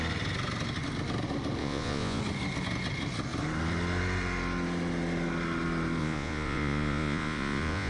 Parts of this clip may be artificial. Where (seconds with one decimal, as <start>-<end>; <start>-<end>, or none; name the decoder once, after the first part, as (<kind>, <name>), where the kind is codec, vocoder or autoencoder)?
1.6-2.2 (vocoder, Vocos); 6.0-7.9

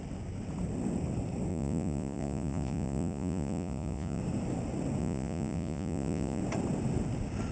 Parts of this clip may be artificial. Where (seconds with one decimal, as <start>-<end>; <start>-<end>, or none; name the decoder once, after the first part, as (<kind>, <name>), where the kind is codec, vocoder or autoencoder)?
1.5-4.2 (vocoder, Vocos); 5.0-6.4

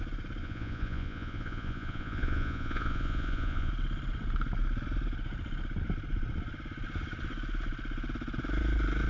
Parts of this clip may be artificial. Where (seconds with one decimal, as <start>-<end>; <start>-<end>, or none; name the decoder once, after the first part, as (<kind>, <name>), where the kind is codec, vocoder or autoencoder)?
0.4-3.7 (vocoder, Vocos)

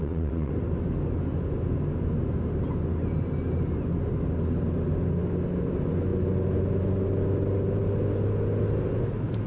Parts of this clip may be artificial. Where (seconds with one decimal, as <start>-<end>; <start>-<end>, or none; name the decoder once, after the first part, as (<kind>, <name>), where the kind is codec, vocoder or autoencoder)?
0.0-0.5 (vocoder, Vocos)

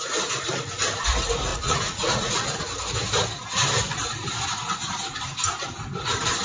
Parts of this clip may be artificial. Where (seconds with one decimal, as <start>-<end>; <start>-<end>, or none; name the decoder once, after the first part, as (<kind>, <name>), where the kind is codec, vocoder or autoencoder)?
1.5-2.6 (vocoder, Vocos)